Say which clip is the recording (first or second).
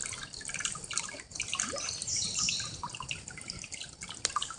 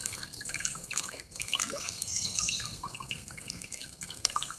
first